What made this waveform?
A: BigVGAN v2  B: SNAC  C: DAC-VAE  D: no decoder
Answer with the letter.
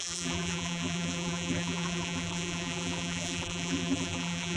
A